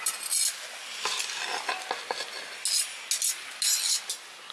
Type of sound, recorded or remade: recorded